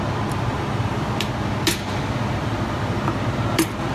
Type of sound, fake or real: fake